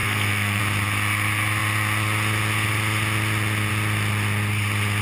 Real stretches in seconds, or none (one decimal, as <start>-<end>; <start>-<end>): 0.6-5.0